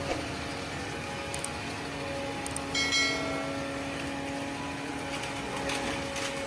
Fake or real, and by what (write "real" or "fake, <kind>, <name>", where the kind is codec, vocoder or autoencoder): real